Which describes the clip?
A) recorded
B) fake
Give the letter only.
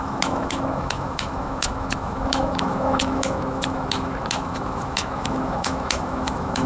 B